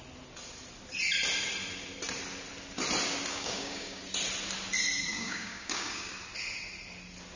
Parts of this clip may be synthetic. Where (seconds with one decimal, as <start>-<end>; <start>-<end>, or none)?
3.3-4.0; 5.1-6.1